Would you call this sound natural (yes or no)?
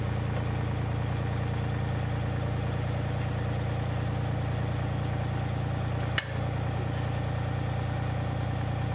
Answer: yes